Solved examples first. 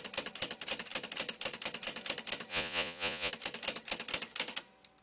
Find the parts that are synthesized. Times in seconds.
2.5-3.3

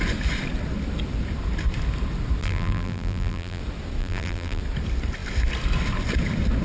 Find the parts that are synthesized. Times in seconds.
2.4-3.6; 4.0-4.6

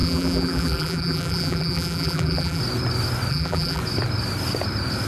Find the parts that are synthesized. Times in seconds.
0.0-2.6; 3.3-3.8

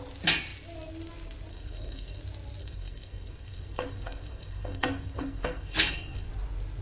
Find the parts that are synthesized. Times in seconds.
1.5-2.2; 2.6-6.3

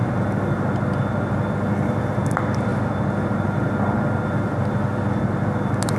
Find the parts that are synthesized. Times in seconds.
2.7-4.3

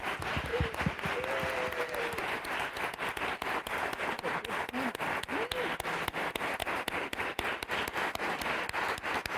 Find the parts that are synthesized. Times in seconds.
none

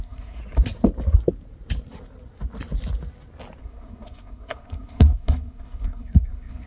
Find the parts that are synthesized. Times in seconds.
0.0-0.4; 3.6-6.7

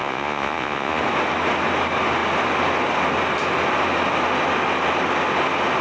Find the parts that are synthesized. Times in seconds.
0.0-1.0